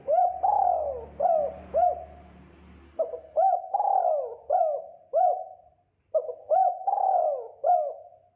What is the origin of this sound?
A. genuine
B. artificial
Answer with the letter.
A